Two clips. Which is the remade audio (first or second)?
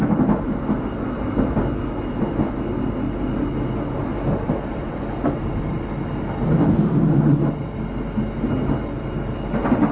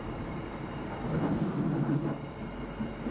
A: second